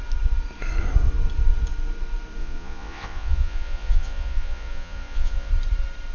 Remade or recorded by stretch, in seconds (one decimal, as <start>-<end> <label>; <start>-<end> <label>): 0.0-2.4 recorded; 2.4-5.5 remade; 5.5-6.1 recorded